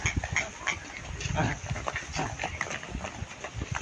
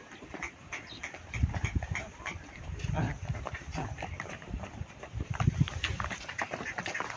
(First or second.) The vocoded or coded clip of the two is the second